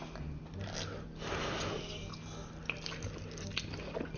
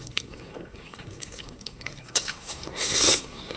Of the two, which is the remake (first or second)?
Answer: second